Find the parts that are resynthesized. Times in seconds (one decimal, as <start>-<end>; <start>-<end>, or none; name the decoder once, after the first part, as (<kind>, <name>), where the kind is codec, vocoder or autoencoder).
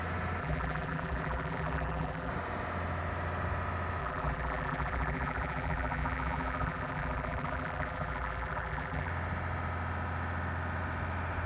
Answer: 0.4-2.3 (vocoder, BigVGAN v2); 4.0-9.1